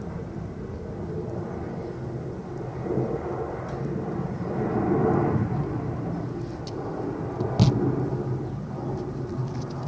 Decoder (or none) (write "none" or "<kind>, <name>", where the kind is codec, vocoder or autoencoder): none